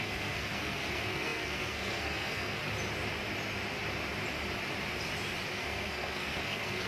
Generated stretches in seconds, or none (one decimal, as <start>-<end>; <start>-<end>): 0.0-2.6; 5.5-6.9